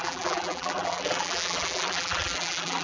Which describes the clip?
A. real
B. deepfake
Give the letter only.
B